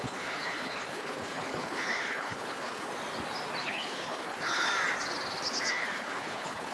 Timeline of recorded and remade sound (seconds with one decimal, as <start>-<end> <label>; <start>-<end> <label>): 0.0-2.9 remade; 2.9-3.6 recorded; 3.6-4.7 remade; 4.7-5.7 recorded; 5.7-6.7 remade